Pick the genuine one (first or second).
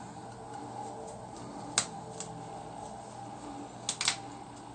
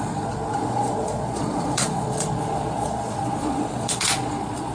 first